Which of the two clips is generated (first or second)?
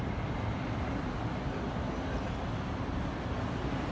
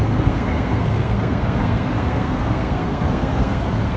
second